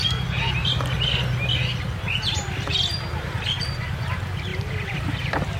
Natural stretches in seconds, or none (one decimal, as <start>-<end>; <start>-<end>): 0.0-4.5